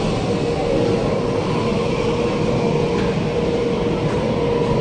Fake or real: real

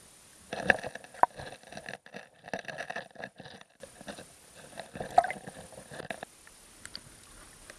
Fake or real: real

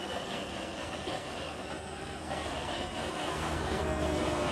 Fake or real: fake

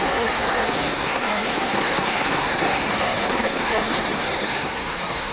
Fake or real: fake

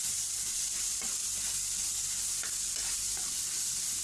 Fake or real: real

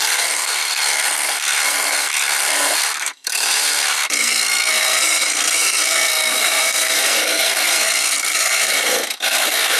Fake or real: fake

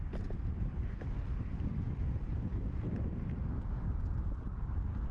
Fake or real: real